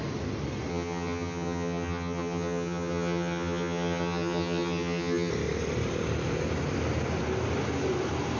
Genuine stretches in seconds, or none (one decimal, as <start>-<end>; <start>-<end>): 0.0-0.7; 5.3-8.4